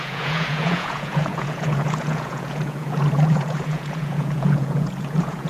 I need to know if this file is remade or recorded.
remade